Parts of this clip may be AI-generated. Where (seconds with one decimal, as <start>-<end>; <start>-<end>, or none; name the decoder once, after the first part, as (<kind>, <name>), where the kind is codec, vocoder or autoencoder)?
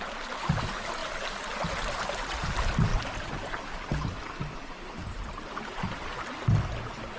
1.0-1.6 (vocoder, BigVGAN v2)